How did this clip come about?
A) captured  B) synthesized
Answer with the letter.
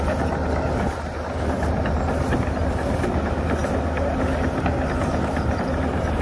A